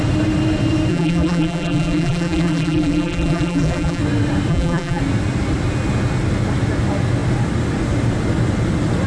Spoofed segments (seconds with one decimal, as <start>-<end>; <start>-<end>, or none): 0.9-4.0; 4.5-5.0